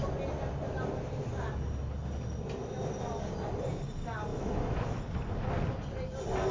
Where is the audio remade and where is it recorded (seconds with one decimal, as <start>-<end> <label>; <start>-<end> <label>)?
0.0-4.3 recorded; 4.3-5.0 remade; 5.0-6.5 recorded

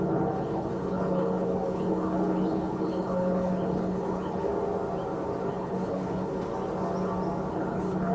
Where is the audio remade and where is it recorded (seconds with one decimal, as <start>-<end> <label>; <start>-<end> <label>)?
0.0-4.5 remade; 4.5-5.4 recorded; 5.4-6.5 remade; 6.5-7.5 recorded; 7.5-8.1 remade

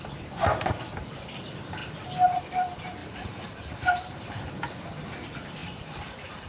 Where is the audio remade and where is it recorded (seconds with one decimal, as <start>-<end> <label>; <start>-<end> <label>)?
0.0-1.8 recorded; 1.8-2.4 remade; 2.4-3.0 recorded; 3.0-4.5 remade; 4.5-5.6 recorded; 5.6-6.5 remade

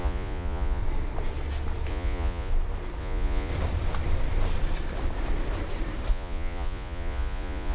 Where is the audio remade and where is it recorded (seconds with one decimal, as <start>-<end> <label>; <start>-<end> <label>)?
0.0-0.8 remade; 0.8-1.9 recorded; 1.9-2.5 remade; 2.5-3.0 recorded; 3.0-3.5 remade; 3.5-6.1 recorded; 6.1-7.7 remade